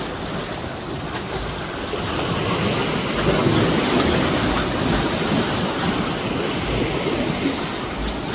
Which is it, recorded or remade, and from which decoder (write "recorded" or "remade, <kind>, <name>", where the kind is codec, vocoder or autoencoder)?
recorded